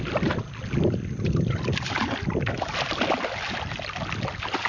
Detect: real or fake real